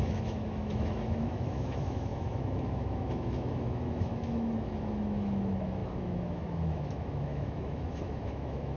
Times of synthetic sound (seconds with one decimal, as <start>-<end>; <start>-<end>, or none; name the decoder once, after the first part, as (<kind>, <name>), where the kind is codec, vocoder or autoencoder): 0.0-8.8 (autoencoder, DAC-VAE)